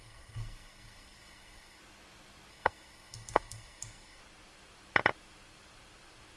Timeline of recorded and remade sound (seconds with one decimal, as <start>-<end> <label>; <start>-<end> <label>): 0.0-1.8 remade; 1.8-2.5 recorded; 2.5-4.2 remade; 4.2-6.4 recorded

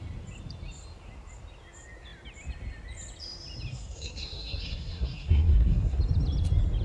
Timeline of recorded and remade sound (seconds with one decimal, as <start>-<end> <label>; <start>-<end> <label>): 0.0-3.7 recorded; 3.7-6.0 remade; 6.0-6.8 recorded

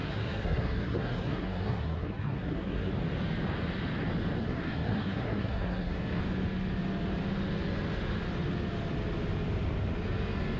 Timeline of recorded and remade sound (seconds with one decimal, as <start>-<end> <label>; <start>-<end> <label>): 0.0-2.9 remade; 2.9-4.4 recorded; 4.4-6.2 remade; 6.2-10.6 recorded

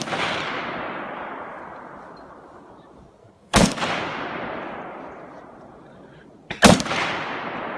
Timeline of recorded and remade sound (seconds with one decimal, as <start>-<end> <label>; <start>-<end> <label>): 0.0-3.2 recorded; 3.2-3.9 remade; 3.9-7.8 recorded